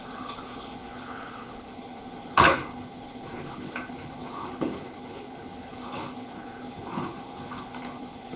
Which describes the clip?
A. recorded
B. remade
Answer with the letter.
B